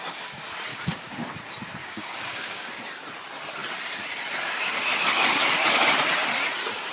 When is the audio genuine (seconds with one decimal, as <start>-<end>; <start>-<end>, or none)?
0.0-0.7; 1.3-1.8; 2.8-6.9